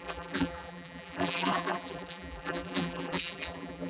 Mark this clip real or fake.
fake